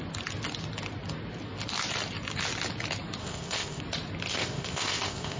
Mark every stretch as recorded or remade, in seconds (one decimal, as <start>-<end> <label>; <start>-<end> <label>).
0.0-3.2 recorded; 3.2-3.8 remade; 3.8-4.3 recorded; 4.3-5.4 remade